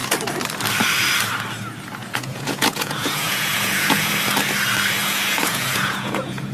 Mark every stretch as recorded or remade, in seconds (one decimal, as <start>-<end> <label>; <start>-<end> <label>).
0.0-2.0 recorded; 2.0-4.1 remade; 4.1-5.0 recorded; 5.0-6.5 remade